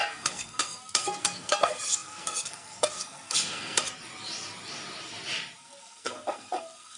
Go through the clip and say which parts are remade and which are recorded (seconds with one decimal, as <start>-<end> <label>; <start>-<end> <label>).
0.0-3.8 remade; 3.8-5.6 recorded; 5.6-7.0 remade